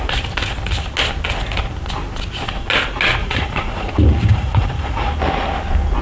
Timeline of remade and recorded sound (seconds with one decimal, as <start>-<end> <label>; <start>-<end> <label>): 0.0-3.2 recorded; 3.2-3.9 remade; 3.9-4.3 recorded; 4.3-5.1 remade; 5.1-6.0 recorded